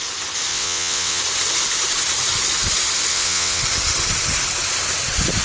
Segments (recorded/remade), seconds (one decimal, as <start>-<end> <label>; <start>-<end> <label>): 0.0-0.5 recorded; 0.5-1.2 remade; 1.2-3.1 recorded; 3.1-3.6 remade; 3.6-5.4 recorded

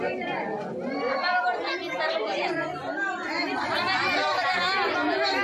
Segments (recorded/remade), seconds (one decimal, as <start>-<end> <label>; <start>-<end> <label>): 0.0-5.4 recorded

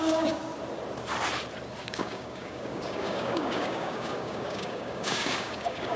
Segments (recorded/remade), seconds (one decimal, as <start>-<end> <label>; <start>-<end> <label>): 0.0-0.4 remade; 0.4-1.8 recorded; 1.8-6.0 remade